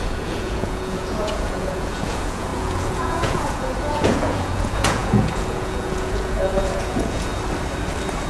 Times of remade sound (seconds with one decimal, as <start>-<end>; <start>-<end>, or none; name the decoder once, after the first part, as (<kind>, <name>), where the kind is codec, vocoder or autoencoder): 0.0-7.3 (vocoder, Vocos)